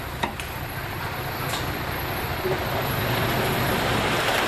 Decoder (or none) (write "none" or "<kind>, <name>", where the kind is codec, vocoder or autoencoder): none